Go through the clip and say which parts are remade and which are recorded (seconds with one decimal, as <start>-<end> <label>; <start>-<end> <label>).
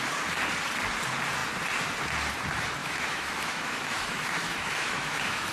0.0-2.8 recorded; 2.8-5.5 remade